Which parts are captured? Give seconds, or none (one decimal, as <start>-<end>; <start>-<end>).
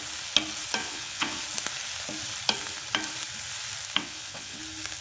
0.0-0.8; 1.4-4.0; 4.6-5.0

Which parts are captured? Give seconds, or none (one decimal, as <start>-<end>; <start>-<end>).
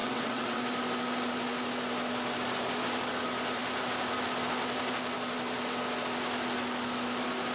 0.6-7.5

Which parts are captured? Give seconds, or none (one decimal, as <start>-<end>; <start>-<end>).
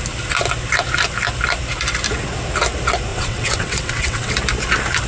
0.0-3.1; 4.3-5.1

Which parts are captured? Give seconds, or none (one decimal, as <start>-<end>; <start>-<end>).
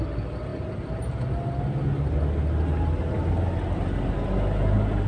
0.0-5.1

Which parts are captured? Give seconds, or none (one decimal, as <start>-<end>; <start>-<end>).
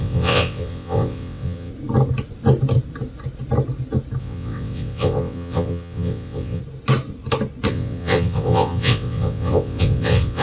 1.7-4.2; 6.6-7.7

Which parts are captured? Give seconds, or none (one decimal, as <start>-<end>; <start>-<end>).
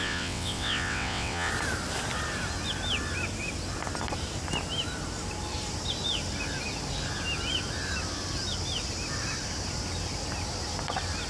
1.5-11.3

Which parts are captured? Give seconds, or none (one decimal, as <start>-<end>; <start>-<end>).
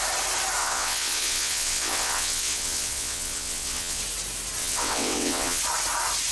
0.0-0.6; 4.0-4.6; 5.6-6.3